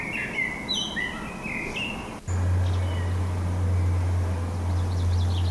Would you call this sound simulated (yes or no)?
no